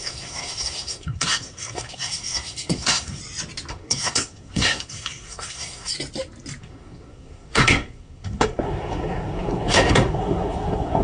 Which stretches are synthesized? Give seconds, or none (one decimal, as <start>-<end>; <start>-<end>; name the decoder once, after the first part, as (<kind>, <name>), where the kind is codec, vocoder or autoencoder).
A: 0.0-3.2 (codec, SNAC); 3.7-5.9; 6.6-11.0